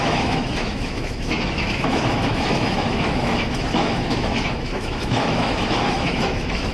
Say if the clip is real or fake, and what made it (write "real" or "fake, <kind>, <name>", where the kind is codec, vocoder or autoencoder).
fake, autoencoder, DAC-VAE